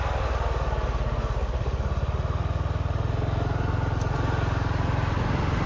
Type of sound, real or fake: real